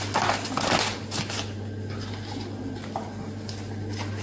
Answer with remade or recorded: recorded